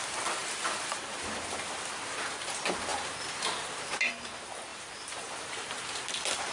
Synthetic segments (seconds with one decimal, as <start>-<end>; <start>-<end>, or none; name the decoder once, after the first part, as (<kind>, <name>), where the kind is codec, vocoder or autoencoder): 0.4-2.0 (vocoder, BigVGAN v2); 4.7-5.7